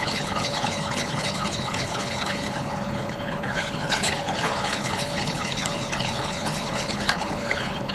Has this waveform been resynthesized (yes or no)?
yes